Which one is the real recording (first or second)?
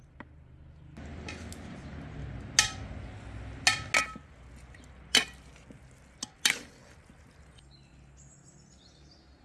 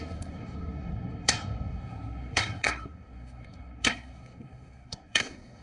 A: first